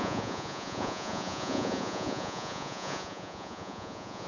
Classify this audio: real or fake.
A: fake